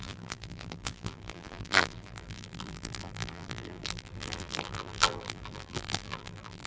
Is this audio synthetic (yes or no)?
yes